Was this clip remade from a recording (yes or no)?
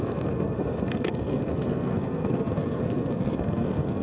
yes